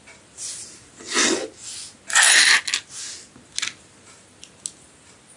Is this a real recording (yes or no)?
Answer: yes